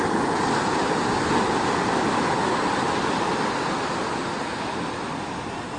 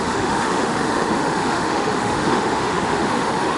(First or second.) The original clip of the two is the first